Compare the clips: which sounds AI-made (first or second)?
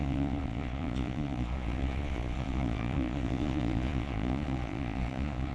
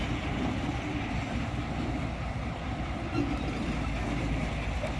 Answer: first